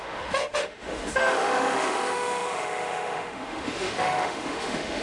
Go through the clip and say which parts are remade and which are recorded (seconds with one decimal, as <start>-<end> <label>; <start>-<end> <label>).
0.0-5.0 remade